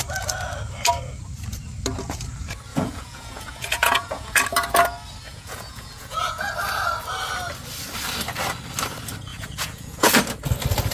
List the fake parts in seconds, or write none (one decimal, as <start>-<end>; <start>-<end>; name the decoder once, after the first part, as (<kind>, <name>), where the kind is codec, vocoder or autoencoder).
2.7-4.4 (vocoder, Vocos); 5.3-6.5; 9.3-10.1